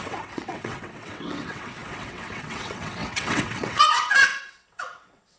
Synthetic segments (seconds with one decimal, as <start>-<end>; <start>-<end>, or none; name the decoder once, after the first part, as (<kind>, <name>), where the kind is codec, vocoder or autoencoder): 0.0-5.4 (vocoder, WaveNeXt)